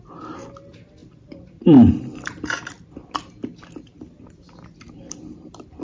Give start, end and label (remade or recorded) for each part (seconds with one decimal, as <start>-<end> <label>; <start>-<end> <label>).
0.0-1.0 recorded; 1.0-2.7 remade; 2.7-5.8 recorded